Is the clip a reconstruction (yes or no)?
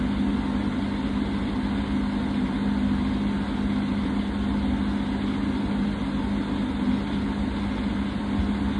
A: no